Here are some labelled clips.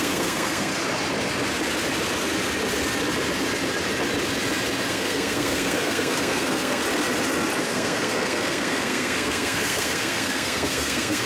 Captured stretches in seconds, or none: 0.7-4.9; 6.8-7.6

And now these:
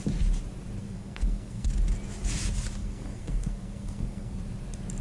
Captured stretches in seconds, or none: 0.0-0.8; 1.7-2.8; 4.4-5.0